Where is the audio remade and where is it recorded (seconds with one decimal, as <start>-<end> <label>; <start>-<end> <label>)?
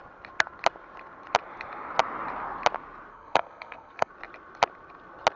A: 0.0-3.1 recorded; 3.1-4.1 remade; 4.1-5.4 recorded